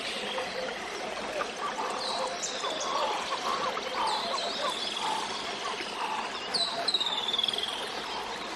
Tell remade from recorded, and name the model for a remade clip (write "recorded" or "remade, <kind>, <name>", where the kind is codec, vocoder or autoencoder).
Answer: recorded